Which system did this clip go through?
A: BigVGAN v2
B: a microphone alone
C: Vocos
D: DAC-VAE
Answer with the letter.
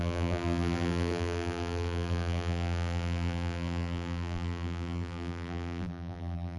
A